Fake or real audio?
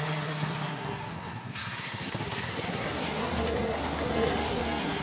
fake